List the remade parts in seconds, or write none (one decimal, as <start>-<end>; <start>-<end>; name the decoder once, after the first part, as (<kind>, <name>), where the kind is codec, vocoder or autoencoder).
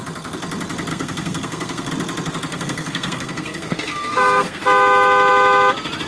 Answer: 0.9-1.9 (codec, SNAC); 2.5-4.6